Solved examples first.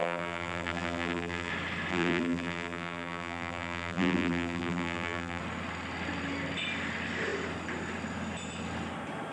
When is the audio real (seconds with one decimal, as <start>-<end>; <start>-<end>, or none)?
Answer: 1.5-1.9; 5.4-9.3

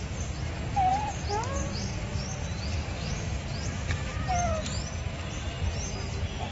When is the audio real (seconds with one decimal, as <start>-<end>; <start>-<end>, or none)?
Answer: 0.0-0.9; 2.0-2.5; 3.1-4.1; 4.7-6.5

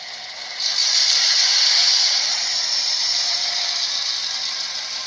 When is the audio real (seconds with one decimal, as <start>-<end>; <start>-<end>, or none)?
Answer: 0.0-0.8; 3.9-5.1

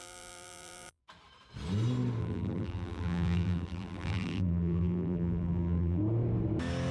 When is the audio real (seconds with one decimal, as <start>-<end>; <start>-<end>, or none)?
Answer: 1.0-2.2; 6.0-6.9

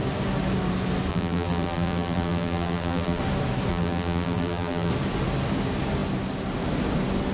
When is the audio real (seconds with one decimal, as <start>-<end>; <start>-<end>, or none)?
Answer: 0.0-1.1; 3.2-3.7; 4.9-7.3

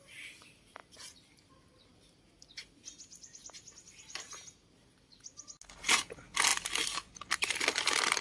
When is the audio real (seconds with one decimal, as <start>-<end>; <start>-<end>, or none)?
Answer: 0.0-8.2